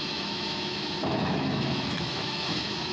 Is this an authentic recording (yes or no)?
no